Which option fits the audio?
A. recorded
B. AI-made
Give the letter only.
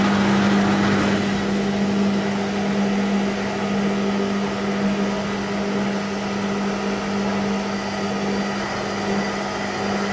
A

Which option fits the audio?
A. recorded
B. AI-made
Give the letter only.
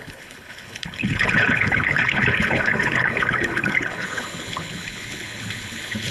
B